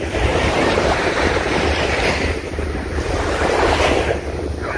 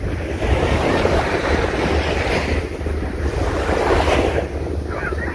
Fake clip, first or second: first